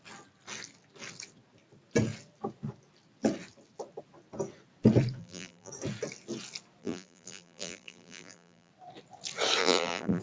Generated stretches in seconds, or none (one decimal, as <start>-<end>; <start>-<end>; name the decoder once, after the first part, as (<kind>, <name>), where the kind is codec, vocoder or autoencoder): 5.2-5.7 (vocoder, BigVGAN v2); 6.8-8.7; 9.6-10.2